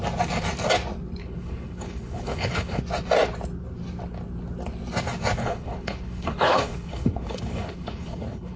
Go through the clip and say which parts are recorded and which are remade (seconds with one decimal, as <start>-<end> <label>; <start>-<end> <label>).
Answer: 0.0-1.2 recorded; 1.2-2.8 remade; 2.8-5.4 recorded; 5.4-8.6 remade